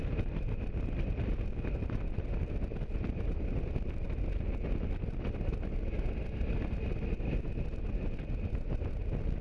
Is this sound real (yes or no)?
yes